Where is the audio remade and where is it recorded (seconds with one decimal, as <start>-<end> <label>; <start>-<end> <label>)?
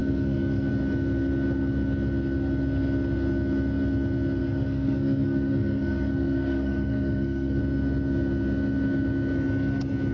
0.0-0.7 remade; 0.7-4.4 recorded; 4.4-7.6 remade; 7.6-10.1 recorded